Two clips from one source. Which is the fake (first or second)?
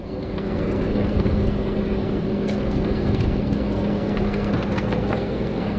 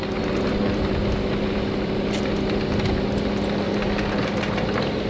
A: first